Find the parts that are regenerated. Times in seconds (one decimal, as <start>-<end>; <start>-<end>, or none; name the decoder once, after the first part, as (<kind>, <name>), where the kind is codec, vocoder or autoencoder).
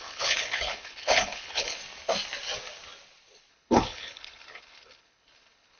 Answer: 0.0-1.8 (codec, HILCodec); 3.5-5.8